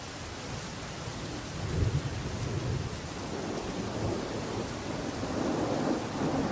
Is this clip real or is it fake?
real